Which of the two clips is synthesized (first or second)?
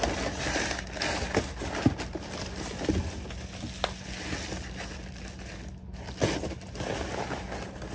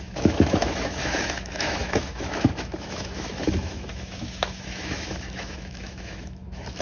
second